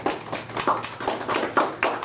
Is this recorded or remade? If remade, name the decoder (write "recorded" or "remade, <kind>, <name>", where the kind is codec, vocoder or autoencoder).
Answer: recorded